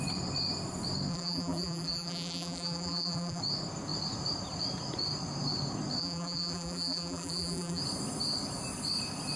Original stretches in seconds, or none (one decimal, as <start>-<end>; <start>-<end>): 0.0-1.1; 3.4-6.0; 7.8-9.4